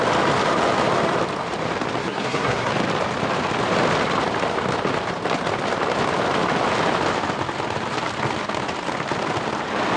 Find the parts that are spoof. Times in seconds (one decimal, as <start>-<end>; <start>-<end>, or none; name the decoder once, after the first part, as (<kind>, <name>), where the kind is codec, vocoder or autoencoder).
2.0-2.7 (codec, SNAC)